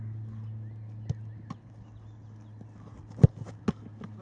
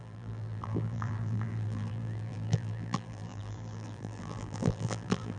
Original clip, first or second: first